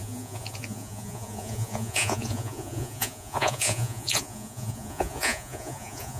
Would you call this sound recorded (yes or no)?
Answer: no